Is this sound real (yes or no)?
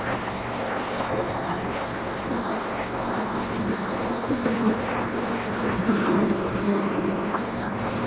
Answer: no